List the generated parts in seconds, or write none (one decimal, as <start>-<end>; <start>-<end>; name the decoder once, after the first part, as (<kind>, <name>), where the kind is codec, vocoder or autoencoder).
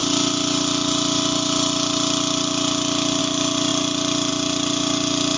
none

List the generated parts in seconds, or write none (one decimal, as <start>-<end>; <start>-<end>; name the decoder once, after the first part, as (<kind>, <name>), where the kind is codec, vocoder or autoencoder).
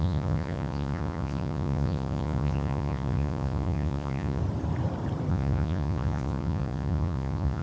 0.0-4.4 (vocoder, Vocos); 5.3-7.6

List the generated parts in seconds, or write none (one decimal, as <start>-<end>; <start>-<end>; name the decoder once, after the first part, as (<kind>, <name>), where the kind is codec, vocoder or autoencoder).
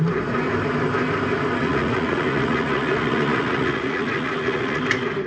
1.6-4.8 (vocoder, Vocos)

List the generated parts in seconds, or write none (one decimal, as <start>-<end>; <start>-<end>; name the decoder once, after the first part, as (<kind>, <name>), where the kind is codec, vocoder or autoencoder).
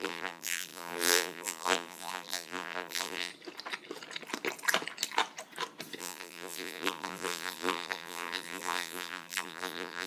0.0-3.3 (vocoder, BigVGAN v2); 6.0-10.1